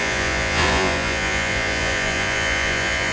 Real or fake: fake